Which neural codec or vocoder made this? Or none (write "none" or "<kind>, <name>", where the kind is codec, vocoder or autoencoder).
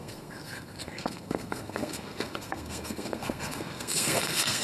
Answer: codec, SNAC